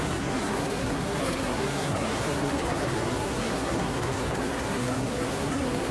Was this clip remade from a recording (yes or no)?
yes